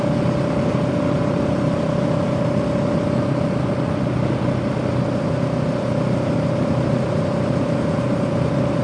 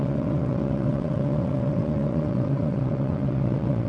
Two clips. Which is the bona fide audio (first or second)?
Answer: first